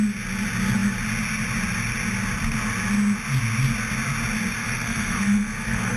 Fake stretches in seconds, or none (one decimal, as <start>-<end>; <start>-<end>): 4.6-6.0

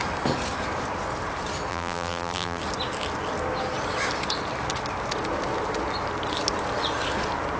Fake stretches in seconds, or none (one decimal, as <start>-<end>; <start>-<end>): 1.7-2.6

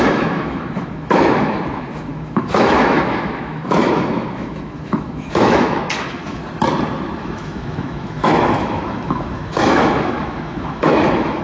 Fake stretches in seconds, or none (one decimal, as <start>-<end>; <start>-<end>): 0.0-6.4; 7.2-11.4

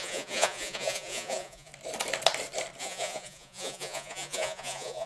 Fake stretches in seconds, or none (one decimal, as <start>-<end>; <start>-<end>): 0.0-1.7; 2.8-5.1

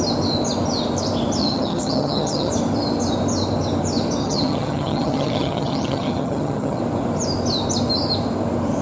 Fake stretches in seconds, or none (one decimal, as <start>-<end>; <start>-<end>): 1.4-2.5; 4.2-6.8